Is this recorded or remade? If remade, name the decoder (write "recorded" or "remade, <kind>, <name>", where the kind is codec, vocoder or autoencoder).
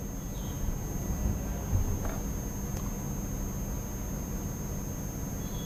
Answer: recorded